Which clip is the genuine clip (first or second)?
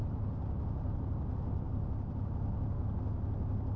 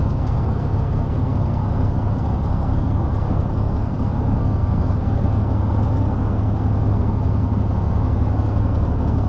first